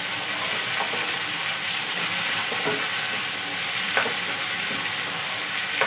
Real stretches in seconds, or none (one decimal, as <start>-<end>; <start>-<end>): 0.0-5.9